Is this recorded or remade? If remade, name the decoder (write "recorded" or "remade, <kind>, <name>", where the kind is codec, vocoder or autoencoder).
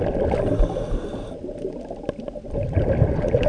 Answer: recorded